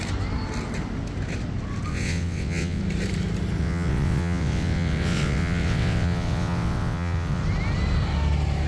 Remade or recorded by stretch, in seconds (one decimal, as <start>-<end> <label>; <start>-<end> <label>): 0.0-1.9 recorded; 1.9-2.8 remade; 2.8-3.6 recorded; 3.6-7.4 remade; 7.4-8.7 recorded